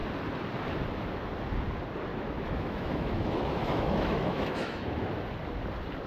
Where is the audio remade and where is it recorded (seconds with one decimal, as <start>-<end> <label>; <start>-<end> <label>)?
0.0-2.1 recorded; 2.1-5.1 remade; 5.1-6.1 recorded